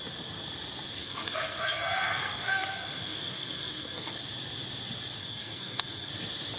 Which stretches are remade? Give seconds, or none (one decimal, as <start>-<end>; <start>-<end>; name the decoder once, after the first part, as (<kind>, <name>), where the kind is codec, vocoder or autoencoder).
1.0-4.2 (codec, SNAC); 5.2-6.1